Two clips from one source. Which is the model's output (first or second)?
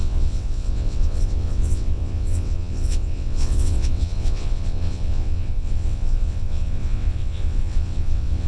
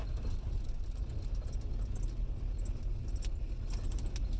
first